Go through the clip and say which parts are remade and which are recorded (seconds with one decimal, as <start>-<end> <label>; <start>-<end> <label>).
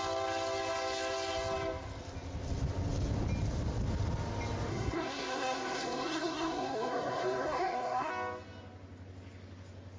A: 0.0-4.7 recorded; 4.7-8.1 remade; 8.1-10.0 recorded